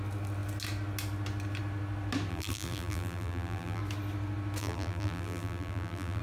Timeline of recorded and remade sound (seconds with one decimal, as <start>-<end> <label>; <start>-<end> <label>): 0.0-2.3 recorded; 2.3-3.8 remade; 3.8-4.6 recorded; 4.6-6.2 remade